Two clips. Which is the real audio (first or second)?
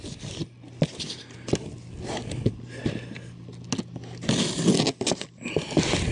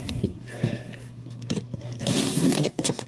first